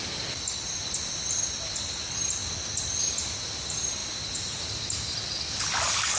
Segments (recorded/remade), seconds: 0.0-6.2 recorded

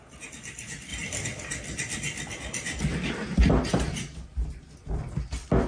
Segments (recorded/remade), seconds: 0.0-5.7 recorded

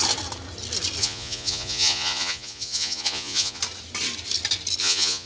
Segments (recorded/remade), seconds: 0.0-1.0 recorded; 1.0-3.6 remade; 3.6-4.8 recorded; 4.8-5.3 remade

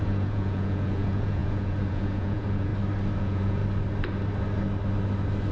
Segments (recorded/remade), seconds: 0.0-2.7 remade; 2.7-3.2 recorded; 3.2-3.6 remade; 3.6-5.5 recorded